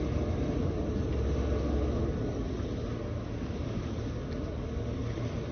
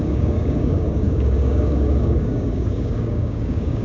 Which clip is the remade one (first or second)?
second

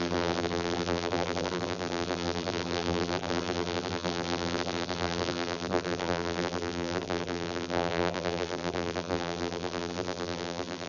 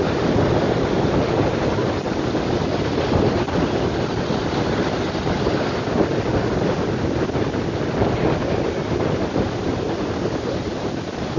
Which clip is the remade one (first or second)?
first